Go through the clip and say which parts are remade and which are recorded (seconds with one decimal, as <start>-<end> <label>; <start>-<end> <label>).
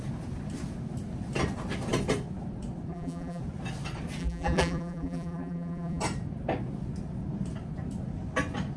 0.0-2.9 recorded; 2.9-3.4 remade; 3.4-4.2 recorded; 4.2-6.0 remade; 6.0-8.8 recorded